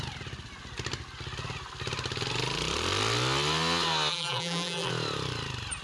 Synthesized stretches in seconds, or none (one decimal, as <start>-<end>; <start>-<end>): 4.1-4.9